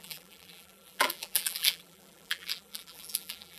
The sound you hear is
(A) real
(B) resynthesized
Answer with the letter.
B